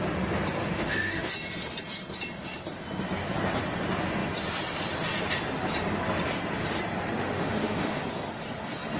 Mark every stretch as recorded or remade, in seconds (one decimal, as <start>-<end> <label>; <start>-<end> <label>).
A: 0.0-0.6 recorded; 0.6-1.3 remade; 1.3-7.2 recorded; 7.2-8.0 remade; 8.0-9.0 recorded